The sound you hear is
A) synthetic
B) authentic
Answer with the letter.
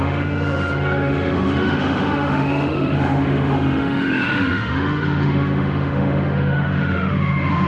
A